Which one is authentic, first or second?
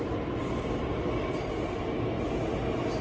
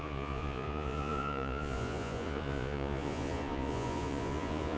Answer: first